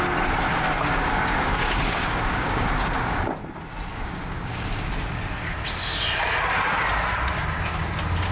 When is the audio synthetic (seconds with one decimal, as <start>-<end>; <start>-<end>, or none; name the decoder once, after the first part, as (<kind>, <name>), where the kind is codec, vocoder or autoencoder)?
0.5-3.3 (codec, DAC); 3.9-4.9